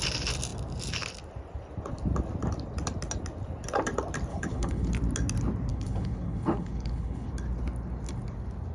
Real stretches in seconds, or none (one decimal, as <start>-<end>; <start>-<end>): 0.0-4.3; 4.9-5.7; 7.3-8.7